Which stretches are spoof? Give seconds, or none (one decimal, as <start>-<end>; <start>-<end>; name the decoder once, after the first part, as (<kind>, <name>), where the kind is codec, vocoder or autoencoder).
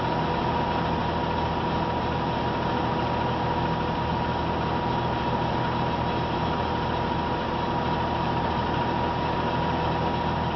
none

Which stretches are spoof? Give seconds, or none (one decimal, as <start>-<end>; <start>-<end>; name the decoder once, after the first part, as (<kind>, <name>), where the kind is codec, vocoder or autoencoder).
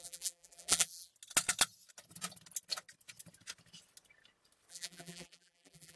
0.0-1.1 (vocoder, BigVGAN v2); 4.7-6.0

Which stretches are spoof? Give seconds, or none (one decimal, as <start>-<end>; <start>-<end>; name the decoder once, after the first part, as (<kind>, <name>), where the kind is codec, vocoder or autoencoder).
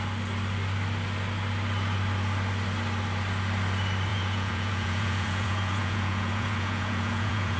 4.1-7.6 (vocoder, Vocos)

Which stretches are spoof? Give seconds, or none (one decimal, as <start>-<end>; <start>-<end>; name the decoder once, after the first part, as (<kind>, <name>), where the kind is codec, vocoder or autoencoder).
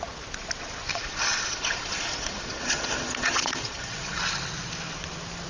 0.9-4.2 (vocoder, Vocos)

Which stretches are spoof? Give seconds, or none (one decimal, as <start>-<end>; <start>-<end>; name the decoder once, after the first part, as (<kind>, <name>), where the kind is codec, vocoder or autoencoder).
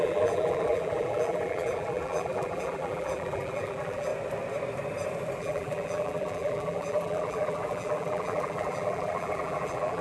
0.0-4.1 (vocoder, BigVGAN v2); 5.4-10.0